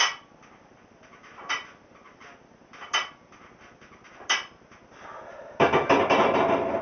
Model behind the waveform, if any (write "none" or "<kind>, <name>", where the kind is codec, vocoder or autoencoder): none